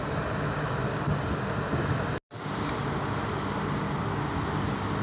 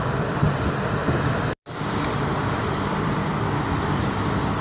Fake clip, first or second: second